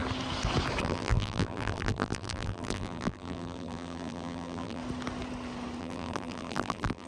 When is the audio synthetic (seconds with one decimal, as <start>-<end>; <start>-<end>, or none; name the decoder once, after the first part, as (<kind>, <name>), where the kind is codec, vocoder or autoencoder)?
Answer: 0.8-4.8 (vocoder, BigVGAN v2); 5.8-7.1